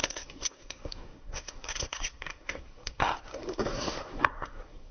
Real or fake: fake